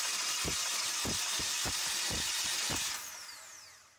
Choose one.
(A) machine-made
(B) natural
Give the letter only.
B